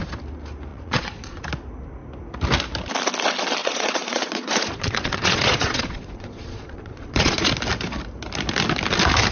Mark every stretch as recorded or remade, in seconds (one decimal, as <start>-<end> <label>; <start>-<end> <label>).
0.0-0.7 recorded; 0.7-1.4 remade; 1.4-3.6 recorded; 3.6-7.5 remade; 7.5-9.3 recorded